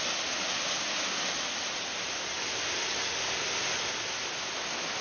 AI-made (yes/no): no